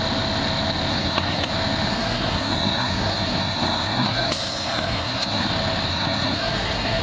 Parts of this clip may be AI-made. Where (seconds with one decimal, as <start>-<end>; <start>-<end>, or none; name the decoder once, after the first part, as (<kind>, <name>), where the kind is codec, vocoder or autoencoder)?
0.9-1.5 (codec, SNAC); 1.9-5.5; 5.9-7.0